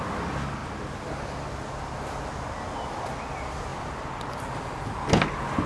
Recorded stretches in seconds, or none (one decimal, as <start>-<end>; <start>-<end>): 0.0-5.7